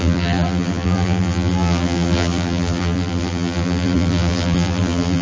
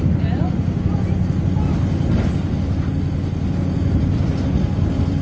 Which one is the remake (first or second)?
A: first